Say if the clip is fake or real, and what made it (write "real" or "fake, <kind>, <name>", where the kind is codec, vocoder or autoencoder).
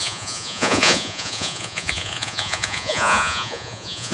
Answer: fake, vocoder, Vocos